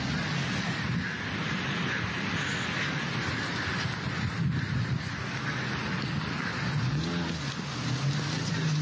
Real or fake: real